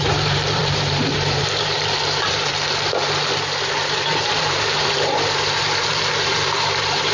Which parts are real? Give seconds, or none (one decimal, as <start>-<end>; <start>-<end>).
2.5-3.6